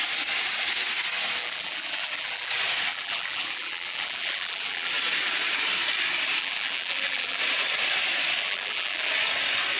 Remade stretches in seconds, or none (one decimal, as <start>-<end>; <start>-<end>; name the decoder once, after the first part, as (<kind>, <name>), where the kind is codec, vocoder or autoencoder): 1.4-2.5 (vocoder, BigVGAN v2); 2.9-4.9; 6.4-7.4; 8.4-9.1